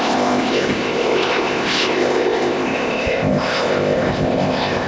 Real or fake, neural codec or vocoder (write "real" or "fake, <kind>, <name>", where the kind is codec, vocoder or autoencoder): fake, codec, ZipCodec